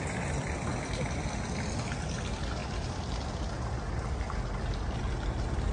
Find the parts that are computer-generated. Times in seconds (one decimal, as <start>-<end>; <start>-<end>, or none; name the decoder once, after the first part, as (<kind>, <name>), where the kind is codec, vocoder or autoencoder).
none